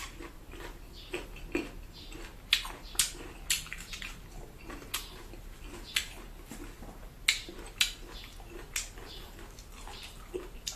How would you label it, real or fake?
real